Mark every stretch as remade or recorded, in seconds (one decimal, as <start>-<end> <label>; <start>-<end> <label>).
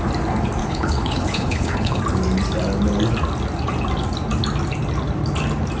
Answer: 0.0-0.6 recorded; 0.6-2.0 remade; 2.0-5.8 recorded